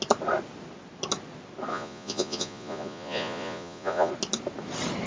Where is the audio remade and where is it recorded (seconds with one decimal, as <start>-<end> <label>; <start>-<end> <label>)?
0.0-1.7 recorded; 1.7-4.1 remade; 4.1-5.1 recorded